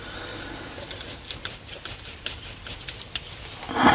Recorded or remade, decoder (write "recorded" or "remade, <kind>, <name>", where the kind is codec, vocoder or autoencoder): recorded